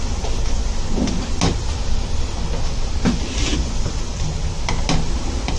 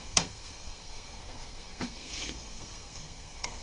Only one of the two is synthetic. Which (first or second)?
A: second